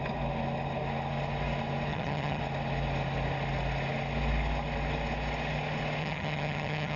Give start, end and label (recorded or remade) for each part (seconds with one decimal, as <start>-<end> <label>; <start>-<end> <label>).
0.0-1.9 recorded; 1.9-2.4 remade; 2.4-6.0 recorded; 6.0-7.0 remade